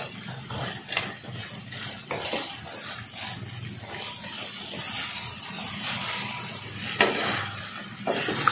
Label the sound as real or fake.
real